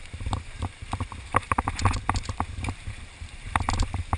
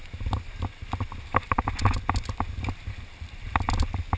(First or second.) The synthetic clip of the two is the first